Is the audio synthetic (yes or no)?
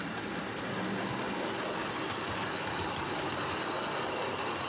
no